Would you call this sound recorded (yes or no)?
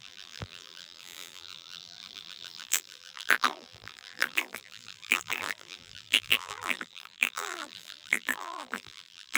no